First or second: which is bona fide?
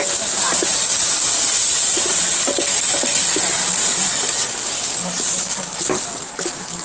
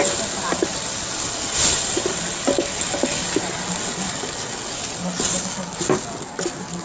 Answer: second